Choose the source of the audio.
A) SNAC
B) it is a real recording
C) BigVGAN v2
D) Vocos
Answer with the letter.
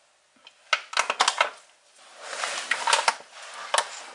B